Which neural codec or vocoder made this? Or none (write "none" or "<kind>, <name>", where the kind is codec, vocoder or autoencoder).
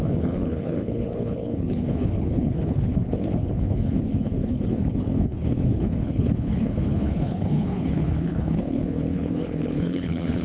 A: codec, HILCodec